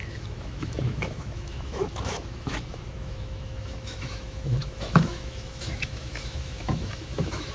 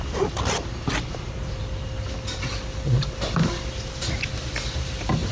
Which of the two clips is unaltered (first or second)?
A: second